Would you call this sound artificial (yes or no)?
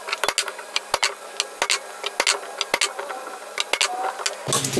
no